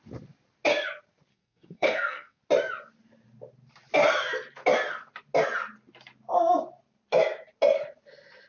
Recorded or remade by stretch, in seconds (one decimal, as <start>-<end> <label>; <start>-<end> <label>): 0.0-1.3 recorded; 1.3-2.4 remade; 2.4-8.5 recorded